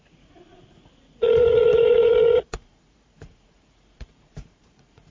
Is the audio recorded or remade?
remade